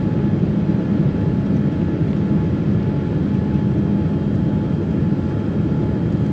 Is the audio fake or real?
real